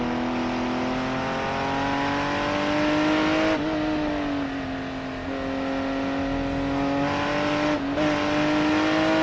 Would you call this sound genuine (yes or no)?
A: yes